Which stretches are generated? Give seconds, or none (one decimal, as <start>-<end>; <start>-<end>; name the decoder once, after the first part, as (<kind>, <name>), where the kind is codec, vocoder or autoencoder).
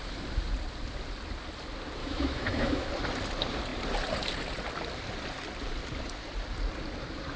2.0-2.9 (autoencoder, DAC-VAE)